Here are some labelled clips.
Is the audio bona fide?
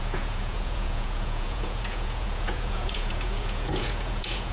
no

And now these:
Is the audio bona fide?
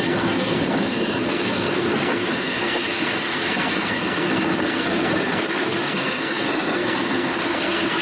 no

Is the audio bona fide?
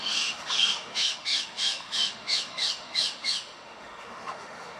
no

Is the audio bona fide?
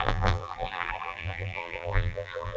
no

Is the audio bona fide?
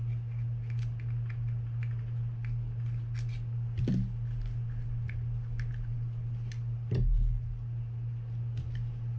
yes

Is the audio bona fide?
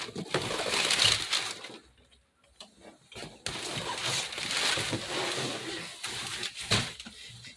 yes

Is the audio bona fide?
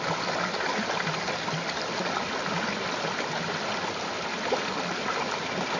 yes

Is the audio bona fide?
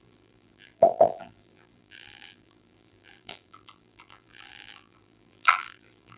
no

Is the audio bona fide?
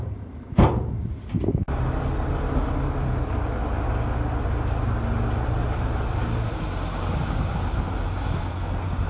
yes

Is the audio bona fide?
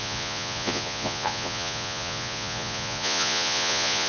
no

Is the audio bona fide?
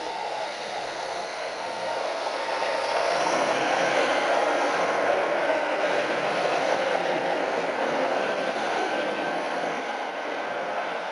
no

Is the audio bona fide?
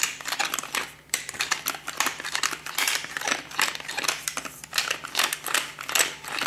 no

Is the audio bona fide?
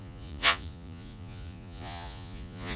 no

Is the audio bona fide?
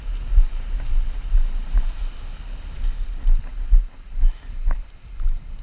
yes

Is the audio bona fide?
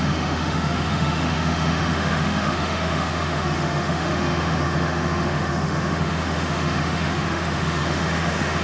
no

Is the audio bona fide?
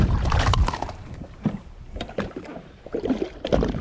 no